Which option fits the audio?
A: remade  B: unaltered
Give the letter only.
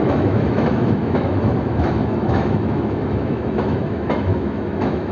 A